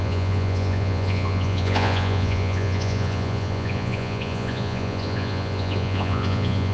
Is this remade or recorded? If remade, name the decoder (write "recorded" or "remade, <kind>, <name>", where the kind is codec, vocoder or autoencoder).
remade, vocoder, Vocos